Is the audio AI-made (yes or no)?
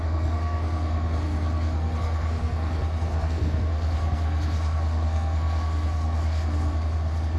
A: yes